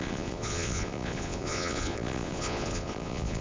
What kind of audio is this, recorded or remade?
remade